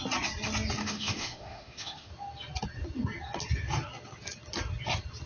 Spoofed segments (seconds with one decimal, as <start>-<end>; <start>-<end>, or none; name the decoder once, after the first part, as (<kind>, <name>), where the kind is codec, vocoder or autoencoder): 0.8-2.1 (autoencoder, DAC-VAE)